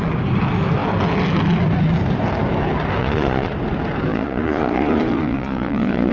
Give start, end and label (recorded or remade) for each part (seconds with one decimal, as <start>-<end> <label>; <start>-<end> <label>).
0.0-3.0 recorded; 3.0-3.5 remade; 3.5-4.1 recorded; 4.1-6.1 remade

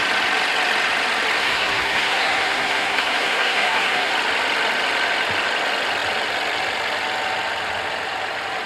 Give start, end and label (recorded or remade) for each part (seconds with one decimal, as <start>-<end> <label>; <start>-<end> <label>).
0.0-1.4 recorded; 1.4-4.1 remade; 4.1-8.7 recorded

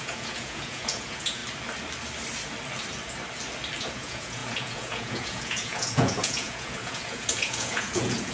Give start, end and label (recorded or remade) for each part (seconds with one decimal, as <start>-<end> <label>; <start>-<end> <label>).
0.0-1.4 remade; 1.4-3.8 recorded; 3.8-8.3 remade

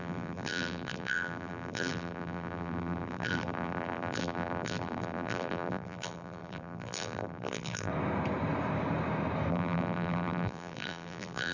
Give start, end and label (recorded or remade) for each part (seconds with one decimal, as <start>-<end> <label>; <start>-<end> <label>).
0.0-7.9 remade; 7.9-9.5 recorded; 9.5-11.5 remade

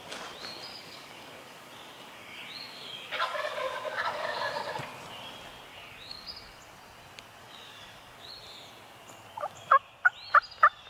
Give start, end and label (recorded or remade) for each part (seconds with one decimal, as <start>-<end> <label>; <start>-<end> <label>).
0.0-0.7 recorded; 0.7-4.8 remade; 4.8-5.7 recorded; 5.7-6.6 remade; 6.6-7.4 recorded; 7.4-8.3 remade; 8.3-10.9 recorded

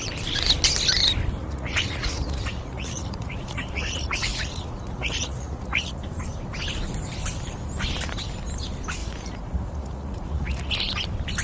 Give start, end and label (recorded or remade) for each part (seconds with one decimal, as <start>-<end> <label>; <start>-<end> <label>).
0.0-1.4 recorded; 1.4-6.0 remade; 6.0-9.0 recorded; 9.0-10.7 remade; 10.7-11.4 recorded

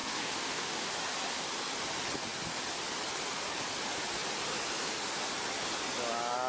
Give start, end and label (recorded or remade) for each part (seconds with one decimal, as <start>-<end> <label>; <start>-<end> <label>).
0.0-0.9 remade; 0.9-6.5 recorded

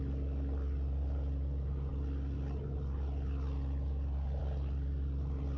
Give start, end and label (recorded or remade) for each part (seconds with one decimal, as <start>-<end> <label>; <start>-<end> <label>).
0.0-5.6 recorded